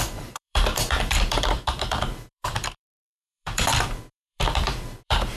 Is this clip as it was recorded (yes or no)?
no